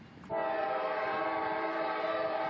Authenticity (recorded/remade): remade